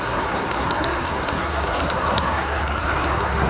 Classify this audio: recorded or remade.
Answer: remade